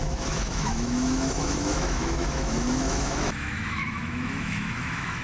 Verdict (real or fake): fake